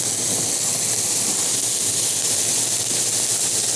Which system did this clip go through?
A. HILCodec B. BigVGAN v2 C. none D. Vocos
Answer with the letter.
C